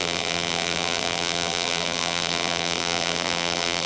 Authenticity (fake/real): fake